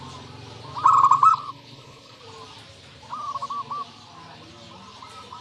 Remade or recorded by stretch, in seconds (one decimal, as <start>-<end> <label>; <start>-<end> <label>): 0.0-1.3 recorded; 1.3-2.2 remade; 2.2-5.4 recorded

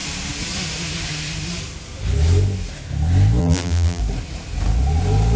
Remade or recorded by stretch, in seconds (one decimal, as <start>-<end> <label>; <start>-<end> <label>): 0.0-3.4 recorded; 3.4-4.0 remade; 4.0-5.4 recorded

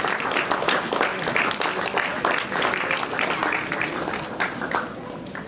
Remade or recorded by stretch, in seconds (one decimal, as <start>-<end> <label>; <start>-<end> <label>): 0.0-5.5 recorded

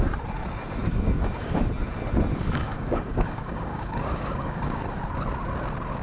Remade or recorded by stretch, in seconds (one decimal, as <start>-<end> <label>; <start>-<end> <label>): 0.0-0.8 recorded; 0.8-1.7 remade; 1.7-2.3 recorded; 2.3-5.0 remade; 5.0-6.0 recorded